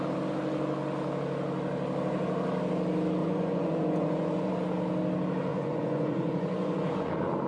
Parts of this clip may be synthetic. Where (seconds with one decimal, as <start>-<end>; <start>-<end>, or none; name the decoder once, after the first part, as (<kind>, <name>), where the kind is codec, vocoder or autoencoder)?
3.2-4.5 (vocoder, Vocos); 5.5-7.1